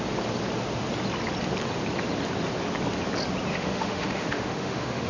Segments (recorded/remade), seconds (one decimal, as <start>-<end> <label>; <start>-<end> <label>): 0.0-3.5 recorded; 3.5-5.1 remade